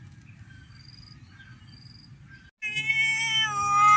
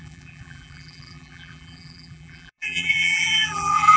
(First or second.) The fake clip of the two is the second